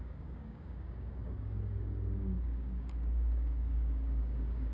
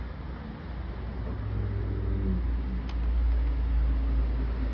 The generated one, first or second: first